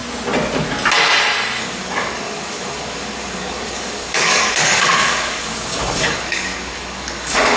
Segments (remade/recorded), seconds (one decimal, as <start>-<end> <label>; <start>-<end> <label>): 0.0-1.6 recorded; 1.6-7.6 remade